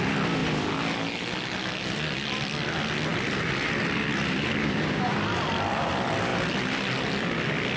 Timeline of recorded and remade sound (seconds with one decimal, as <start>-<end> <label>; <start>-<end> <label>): 0.0-7.8 recorded